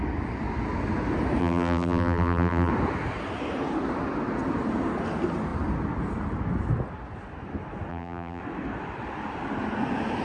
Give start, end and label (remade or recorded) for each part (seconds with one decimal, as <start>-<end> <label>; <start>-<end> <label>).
0.0-1.4 recorded; 1.4-2.7 remade; 2.7-7.9 recorded; 7.9-8.4 remade; 8.4-10.2 recorded